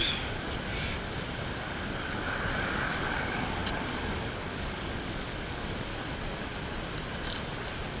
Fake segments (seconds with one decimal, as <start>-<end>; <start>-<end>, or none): 0.0-5.9